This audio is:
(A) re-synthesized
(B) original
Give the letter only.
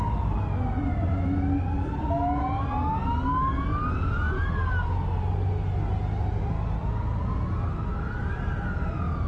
B